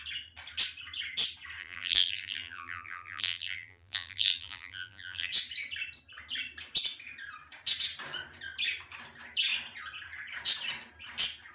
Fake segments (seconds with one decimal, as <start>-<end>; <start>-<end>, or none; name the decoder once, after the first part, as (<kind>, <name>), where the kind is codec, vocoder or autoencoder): 1.6-5.3 (vocoder, BigVGAN v2)